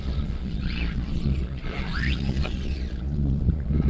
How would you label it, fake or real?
fake